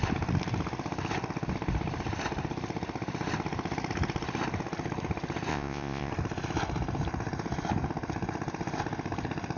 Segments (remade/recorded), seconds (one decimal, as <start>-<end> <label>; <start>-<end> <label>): 0.0-5.5 recorded; 5.5-6.1 remade; 6.1-9.6 recorded

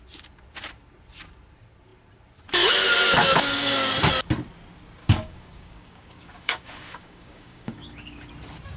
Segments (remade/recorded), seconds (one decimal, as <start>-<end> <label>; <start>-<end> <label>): 0.0-3.2 recorded; 3.2-3.9 remade; 3.9-5.0 recorded; 5.0-8.3 remade; 8.3-8.8 recorded

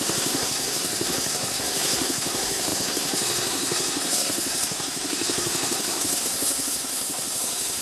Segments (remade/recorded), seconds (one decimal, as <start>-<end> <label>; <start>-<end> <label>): 0.0-7.8 remade

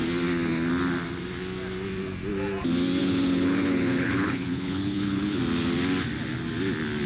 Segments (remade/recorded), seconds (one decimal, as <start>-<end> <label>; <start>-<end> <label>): 0.0-3.0 recorded; 3.0-5.4 remade; 5.4-7.1 recorded

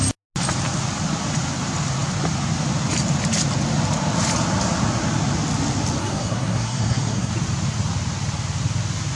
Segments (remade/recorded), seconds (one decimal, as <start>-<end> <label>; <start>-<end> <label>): 0.0-6.0 recorded; 6.0-7.3 remade; 7.3-9.2 recorded

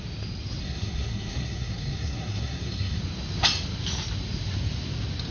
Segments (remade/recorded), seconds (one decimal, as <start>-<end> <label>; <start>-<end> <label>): 0.0-0.6 recorded; 0.6-3.0 remade; 3.0-5.3 recorded

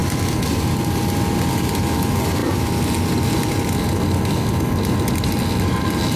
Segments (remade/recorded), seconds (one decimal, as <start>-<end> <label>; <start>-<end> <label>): 0.0-6.2 recorded

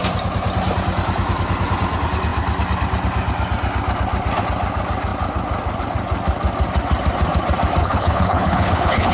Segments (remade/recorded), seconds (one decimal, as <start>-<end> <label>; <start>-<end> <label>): 0.0-7.8 recorded; 7.8-9.1 remade